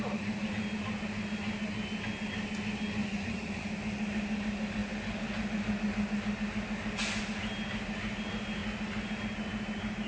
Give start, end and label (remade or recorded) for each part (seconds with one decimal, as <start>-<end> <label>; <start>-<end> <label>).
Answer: 0.0-3.0 recorded; 3.0-3.7 remade; 3.7-10.1 recorded